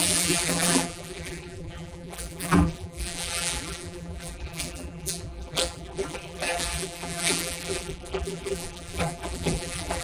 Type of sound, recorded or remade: remade